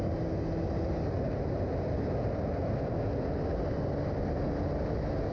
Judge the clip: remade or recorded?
recorded